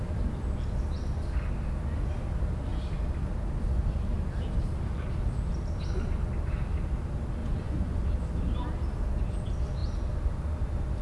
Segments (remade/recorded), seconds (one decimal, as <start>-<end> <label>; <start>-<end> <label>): 0.0-7.4 recorded; 7.4-8.0 remade; 8.0-11.0 recorded